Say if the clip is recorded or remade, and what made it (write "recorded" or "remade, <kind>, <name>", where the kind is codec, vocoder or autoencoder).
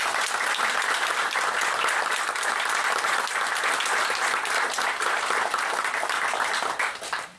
recorded